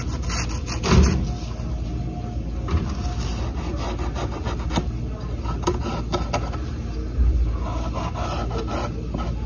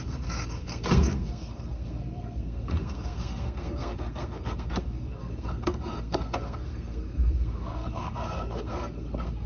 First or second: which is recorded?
first